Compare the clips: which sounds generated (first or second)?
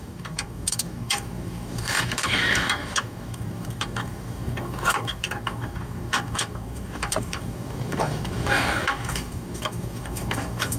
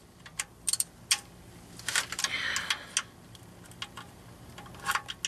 first